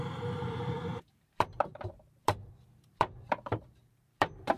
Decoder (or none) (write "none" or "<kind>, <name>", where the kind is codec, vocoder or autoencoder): vocoder, BigVGAN v2